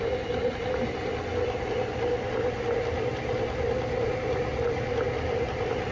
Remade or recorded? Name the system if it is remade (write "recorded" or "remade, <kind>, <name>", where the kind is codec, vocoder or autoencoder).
recorded